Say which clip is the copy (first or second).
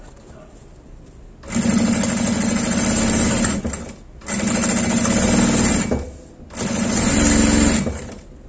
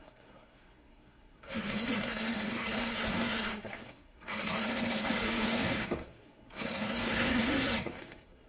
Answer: second